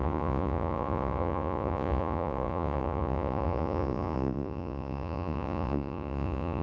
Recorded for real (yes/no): no